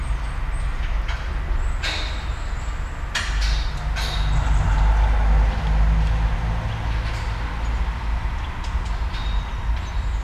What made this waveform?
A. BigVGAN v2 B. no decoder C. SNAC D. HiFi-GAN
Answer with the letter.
B